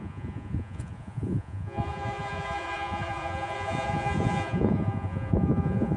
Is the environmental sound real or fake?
fake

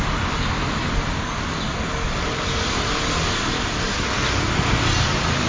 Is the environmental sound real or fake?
real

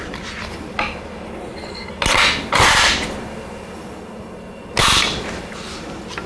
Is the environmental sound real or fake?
real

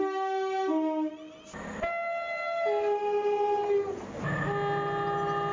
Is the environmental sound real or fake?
real